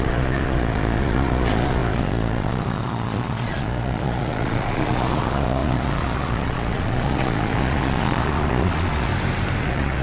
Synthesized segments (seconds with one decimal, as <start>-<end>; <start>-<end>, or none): 0.0-9.1; 9.6-10.0